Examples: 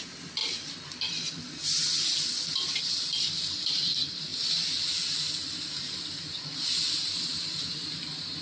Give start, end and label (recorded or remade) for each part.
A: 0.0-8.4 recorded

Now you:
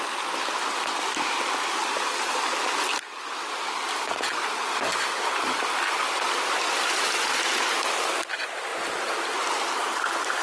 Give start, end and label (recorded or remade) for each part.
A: 0.0-10.4 recorded

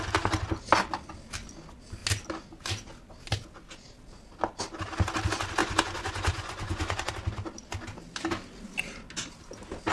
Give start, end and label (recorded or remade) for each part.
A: 0.0-5.6 recorded; 5.6-7.1 remade; 7.1-9.9 recorded

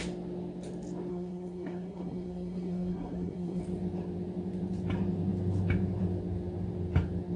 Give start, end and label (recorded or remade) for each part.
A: 0.0-1.1 recorded; 1.1-3.6 remade; 3.6-7.4 recorded

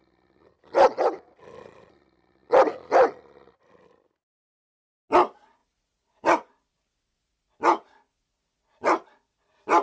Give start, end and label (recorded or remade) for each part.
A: 0.0-5.6 recorded; 5.6-6.5 remade; 6.5-9.8 recorded

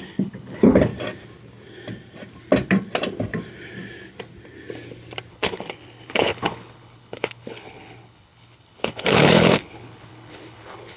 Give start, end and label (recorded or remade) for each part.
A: 0.0-0.9 remade; 0.9-5.3 recorded; 5.3-11.0 remade

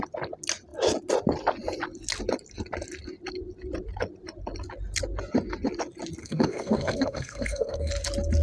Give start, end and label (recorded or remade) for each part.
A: 0.0-6.2 recorded; 6.2-7.9 remade; 7.9-8.4 recorded

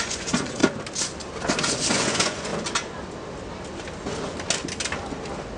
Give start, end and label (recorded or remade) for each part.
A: 0.0-0.6 remade; 0.6-1.6 recorded; 1.6-2.5 remade; 2.5-5.6 recorded